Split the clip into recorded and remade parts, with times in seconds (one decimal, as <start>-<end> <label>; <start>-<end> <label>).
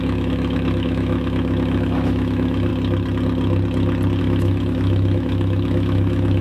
0.0-2.7 remade; 2.7-4.2 recorded; 4.2-6.4 remade